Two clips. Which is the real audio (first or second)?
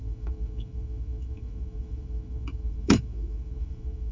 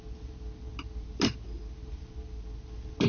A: second